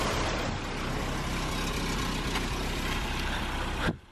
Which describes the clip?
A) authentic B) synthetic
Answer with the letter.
A